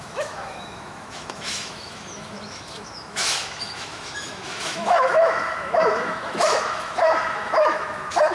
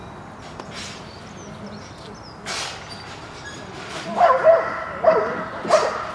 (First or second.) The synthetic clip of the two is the first